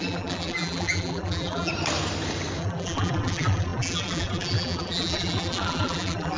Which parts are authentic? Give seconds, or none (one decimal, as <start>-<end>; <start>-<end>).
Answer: 1.7-2.6